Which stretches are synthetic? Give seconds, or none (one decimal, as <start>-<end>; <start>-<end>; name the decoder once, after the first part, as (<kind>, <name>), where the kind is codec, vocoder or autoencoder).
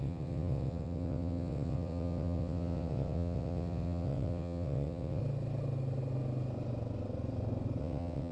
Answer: 0.0-5.2 (vocoder, WaveNeXt); 7.8-8.3